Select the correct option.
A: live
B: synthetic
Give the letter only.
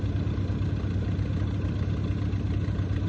A